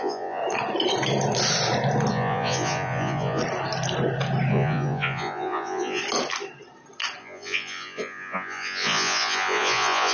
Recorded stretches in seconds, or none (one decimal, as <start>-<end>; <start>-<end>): 0.4-2.1; 3.4-4.5; 6.0-7.2